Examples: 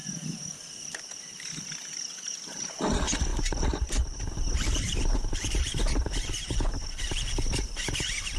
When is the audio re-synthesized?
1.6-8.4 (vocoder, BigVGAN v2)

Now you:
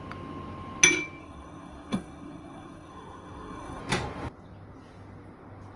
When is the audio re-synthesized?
1.2-3.8 (codec, SNAC)

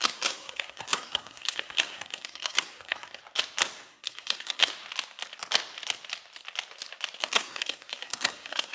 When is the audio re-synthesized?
0.0-3.2 (codec, SNAC); 3.9-4.7; 7.2-8.7